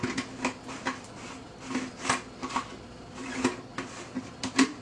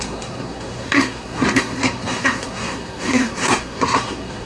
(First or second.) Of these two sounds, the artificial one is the second